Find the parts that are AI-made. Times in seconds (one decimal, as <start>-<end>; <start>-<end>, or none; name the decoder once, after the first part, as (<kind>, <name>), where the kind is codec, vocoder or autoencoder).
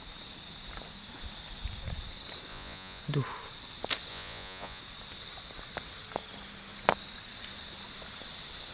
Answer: 2.5-3.0 (vocoder, Vocos); 4.1-4.8